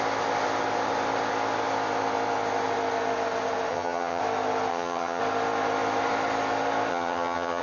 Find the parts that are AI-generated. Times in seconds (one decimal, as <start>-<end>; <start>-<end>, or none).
3.7-4.2; 4.7-5.2; 6.9-7.6